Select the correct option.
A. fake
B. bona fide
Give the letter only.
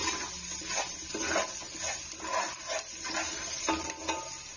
B